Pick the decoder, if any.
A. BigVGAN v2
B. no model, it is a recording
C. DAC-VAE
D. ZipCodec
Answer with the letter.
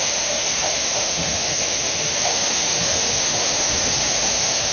C